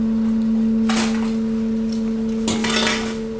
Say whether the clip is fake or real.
real